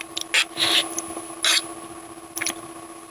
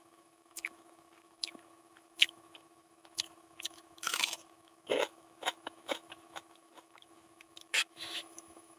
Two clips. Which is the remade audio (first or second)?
second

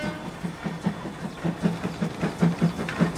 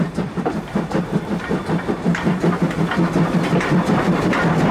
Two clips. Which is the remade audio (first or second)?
second